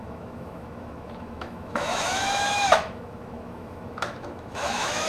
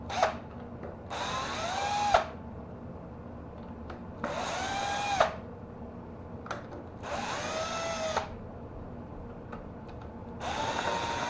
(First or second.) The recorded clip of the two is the second